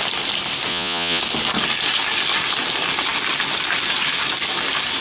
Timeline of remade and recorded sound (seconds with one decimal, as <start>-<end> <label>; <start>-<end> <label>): 0.0-0.7 recorded; 0.7-1.2 remade; 1.2-5.0 recorded